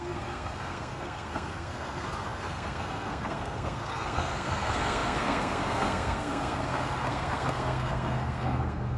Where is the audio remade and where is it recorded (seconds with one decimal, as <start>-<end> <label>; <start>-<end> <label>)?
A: 0.0-9.0 remade